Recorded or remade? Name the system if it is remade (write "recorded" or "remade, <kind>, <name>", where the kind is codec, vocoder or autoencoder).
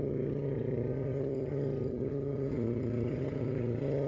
remade, vocoder, HiFi-GAN